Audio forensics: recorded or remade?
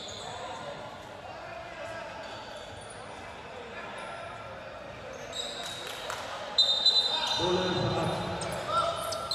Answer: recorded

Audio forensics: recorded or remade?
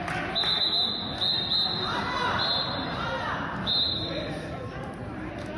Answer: recorded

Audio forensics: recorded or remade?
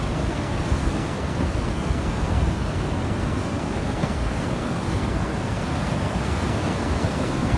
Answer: remade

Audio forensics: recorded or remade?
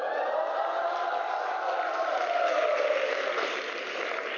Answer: recorded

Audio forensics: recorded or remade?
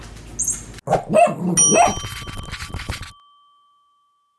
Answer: recorded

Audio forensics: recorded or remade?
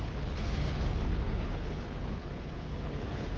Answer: remade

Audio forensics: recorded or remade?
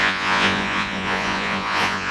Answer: remade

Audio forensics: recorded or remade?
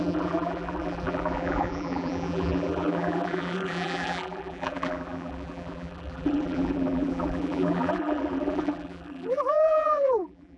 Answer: remade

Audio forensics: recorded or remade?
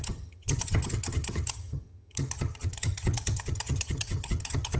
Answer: remade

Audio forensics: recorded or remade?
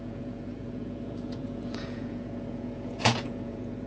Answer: remade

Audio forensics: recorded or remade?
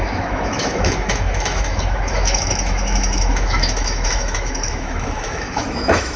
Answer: remade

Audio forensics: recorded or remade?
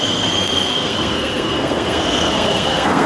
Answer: remade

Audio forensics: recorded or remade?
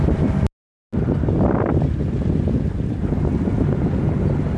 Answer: recorded